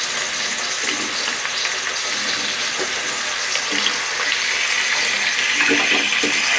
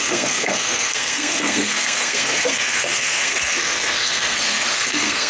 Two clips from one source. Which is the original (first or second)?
first